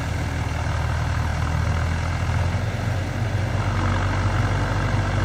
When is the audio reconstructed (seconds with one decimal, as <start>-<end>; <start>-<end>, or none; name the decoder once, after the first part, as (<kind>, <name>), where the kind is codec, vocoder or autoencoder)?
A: none